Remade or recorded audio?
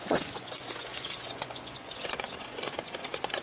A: remade